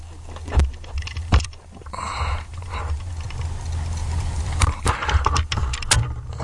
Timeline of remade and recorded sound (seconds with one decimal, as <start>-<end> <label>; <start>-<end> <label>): 0.0-1.0 recorded; 1.0-3.1 remade; 3.1-4.0 recorded; 4.0-4.9 remade; 4.9-6.4 recorded